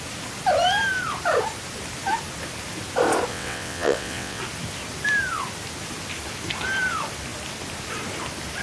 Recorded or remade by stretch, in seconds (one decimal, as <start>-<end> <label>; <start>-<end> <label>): 0.0-3.3 recorded; 3.3-4.4 remade; 4.4-8.6 recorded